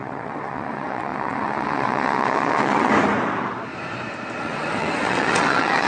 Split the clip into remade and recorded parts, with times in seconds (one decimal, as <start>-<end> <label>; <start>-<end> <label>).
0.0-2.9 remade; 2.9-4.4 recorded; 4.4-5.9 remade